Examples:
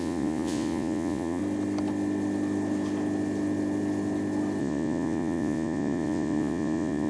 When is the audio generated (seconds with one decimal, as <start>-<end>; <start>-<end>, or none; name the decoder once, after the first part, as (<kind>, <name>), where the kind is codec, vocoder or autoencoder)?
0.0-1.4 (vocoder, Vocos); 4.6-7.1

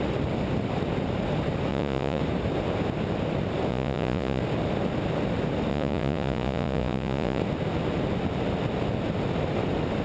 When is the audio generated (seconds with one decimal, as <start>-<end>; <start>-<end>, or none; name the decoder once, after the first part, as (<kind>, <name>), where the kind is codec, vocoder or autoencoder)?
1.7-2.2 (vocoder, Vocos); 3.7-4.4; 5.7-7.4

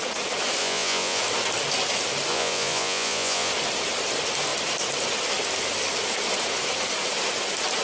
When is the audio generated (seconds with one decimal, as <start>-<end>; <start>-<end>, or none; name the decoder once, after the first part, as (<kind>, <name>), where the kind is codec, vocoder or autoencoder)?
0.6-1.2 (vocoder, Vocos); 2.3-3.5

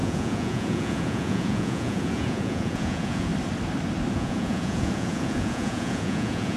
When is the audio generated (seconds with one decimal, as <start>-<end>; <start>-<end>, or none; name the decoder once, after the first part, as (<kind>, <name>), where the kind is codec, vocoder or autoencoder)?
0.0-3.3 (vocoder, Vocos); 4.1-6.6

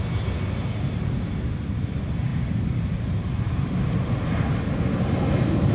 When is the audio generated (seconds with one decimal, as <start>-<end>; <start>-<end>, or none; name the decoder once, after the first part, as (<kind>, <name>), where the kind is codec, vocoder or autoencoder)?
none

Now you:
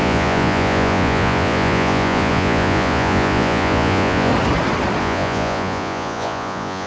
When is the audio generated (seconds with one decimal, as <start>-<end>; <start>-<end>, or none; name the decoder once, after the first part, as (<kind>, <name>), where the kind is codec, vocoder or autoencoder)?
0.0-4.3 (vocoder, Vocos); 5.0-6.9

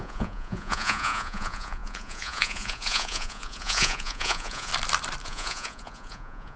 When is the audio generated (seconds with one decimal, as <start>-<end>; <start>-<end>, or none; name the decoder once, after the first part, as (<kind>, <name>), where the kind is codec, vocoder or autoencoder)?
0.0-4.7 (vocoder, Vocos); 5.2-6.6

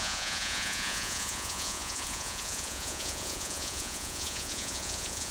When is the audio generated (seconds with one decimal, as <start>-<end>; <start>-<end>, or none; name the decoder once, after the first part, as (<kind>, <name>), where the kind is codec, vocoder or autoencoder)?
0.0-5.3 (vocoder, Vocos)